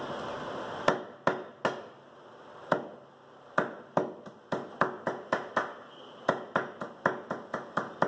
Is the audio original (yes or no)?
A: yes